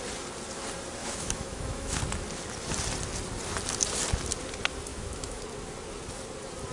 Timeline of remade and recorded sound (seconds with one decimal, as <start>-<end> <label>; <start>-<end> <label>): 0.0-1.0 recorded; 1.0-2.0 remade; 2.0-4.9 recorded; 4.9-5.4 remade; 5.4-6.7 recorded